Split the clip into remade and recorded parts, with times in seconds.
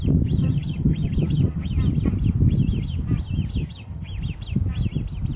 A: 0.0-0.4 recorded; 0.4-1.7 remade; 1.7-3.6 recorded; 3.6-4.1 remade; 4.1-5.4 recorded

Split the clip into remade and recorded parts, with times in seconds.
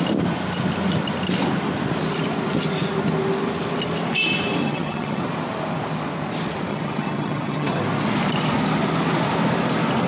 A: 0.0-4.6 recorded; 4.6-5.2 remade; 5.2-6.7 recorded; 6.7-7.8 remade; 7.8-10.1 recorded